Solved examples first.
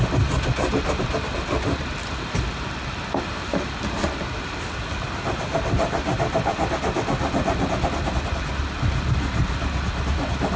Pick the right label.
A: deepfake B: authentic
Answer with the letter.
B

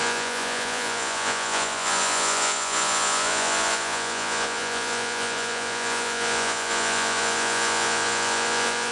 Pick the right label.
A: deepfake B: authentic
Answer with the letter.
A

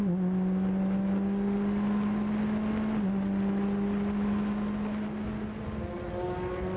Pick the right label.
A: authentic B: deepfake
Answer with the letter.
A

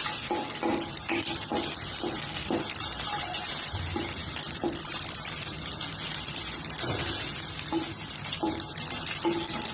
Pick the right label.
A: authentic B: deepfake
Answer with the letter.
A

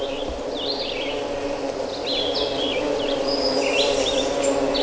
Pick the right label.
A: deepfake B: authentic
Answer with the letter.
B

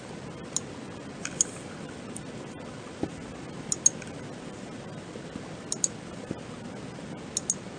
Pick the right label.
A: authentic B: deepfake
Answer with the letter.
A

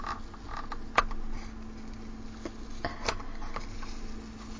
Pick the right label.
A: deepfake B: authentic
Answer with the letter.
B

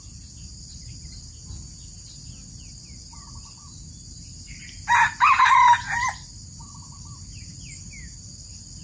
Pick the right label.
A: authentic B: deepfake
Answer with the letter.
A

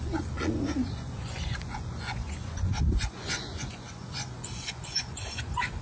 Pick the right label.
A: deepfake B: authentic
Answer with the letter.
A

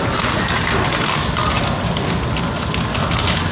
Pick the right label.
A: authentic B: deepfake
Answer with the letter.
A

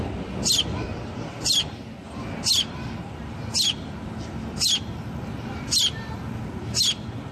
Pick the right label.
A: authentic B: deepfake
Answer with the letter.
A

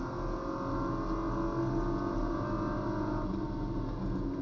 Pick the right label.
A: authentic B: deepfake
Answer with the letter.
A